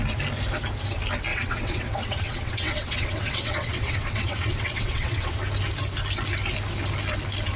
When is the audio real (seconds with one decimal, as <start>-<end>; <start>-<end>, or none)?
0.0-1.3; 5.4-7.6